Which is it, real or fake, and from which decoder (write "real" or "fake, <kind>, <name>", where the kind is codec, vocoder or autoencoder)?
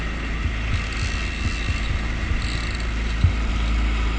real